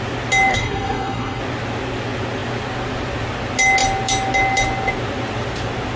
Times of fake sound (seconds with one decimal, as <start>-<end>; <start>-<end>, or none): 0.5-1.4